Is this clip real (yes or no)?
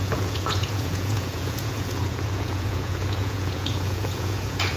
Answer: no